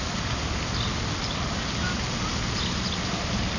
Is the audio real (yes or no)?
yes